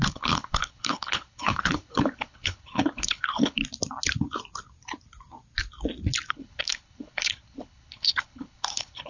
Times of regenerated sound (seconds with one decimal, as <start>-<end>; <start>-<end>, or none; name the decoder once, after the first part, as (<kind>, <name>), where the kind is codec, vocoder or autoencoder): 0.0-3.6 (codec, HILCodec); 6.3-9.1